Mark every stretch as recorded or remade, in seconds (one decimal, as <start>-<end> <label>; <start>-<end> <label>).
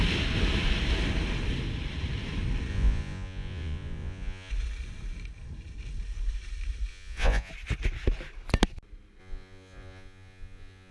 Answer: 0.0-2.7 recorded; 2.7-4.5 remade; 4.5-6.9 recorded; 6.9-7.5 remade; 7.5-9.2 recorded; 9.2-10.9 remade